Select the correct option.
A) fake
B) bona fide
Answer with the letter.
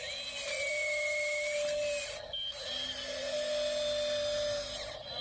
B